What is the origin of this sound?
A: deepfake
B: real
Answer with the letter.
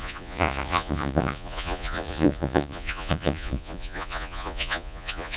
A